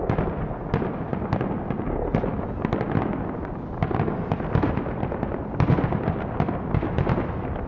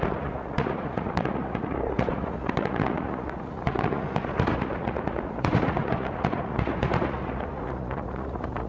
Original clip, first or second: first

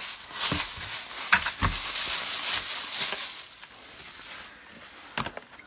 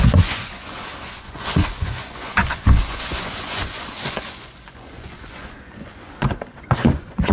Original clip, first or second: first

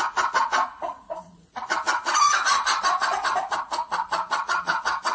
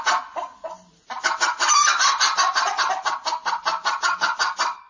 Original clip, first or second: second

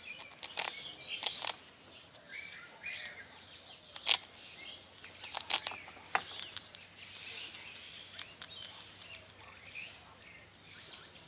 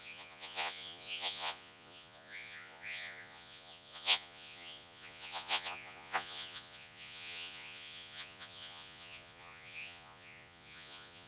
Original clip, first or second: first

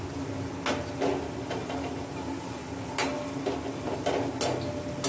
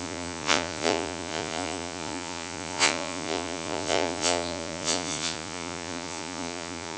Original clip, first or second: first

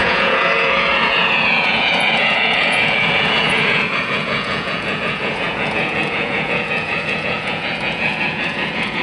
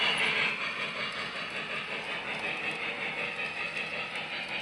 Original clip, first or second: second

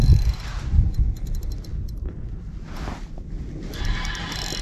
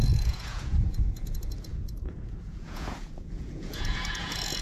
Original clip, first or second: first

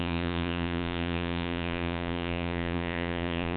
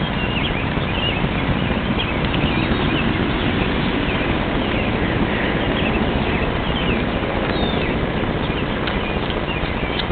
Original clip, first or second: second